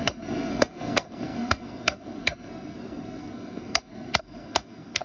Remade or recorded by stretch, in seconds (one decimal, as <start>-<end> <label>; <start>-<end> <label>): 0.0-5.0 remade

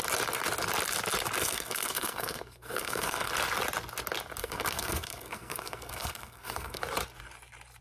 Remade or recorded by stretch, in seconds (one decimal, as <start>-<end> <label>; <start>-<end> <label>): 0.0-1.4 recorded; 1.4-3.3 remade; 3.3-4.4 recorded; 4.4-6.8 remade; 6.8-7.8 recorded

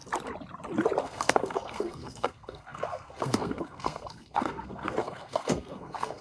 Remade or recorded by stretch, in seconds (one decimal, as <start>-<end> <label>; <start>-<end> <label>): 0.0-1.0 recorded; 1.0-6.2 remade

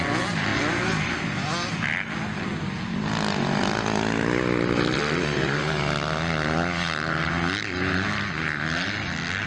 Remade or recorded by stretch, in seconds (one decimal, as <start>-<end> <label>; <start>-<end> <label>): 0.0-9.5 recorded

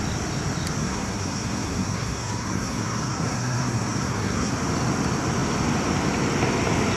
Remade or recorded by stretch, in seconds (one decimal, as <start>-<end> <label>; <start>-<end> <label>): 0.0-0.8 recorded; 0.8-4.5 remade; 4.5-7.0 recorded

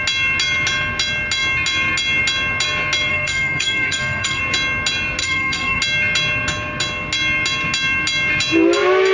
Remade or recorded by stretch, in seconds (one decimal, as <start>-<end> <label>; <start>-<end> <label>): 0.0-3.1 recorded; 3.1-4.4 remade; 4.4-5.2 recorded; 5.2-5.8 remade; 5.8-9.1 recorded